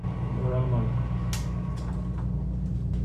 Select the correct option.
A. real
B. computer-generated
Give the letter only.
A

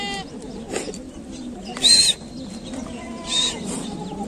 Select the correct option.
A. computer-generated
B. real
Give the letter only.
B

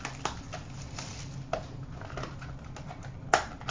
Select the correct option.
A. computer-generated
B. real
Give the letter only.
B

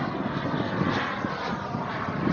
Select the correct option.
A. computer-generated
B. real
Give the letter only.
B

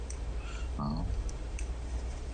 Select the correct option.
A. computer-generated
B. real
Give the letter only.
A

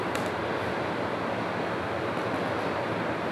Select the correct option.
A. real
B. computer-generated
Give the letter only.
A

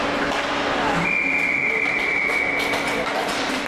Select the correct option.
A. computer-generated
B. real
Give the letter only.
B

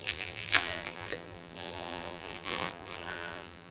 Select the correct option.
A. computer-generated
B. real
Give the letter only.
A